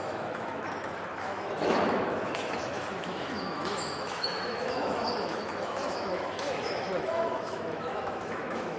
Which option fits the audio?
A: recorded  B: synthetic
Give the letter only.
B